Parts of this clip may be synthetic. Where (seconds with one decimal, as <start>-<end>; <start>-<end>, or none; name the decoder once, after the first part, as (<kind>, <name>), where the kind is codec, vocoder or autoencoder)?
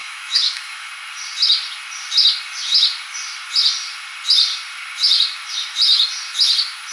0.0-0.9 (autoencoder, DAC-VAE)